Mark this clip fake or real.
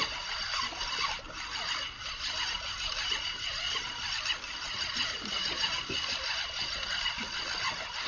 real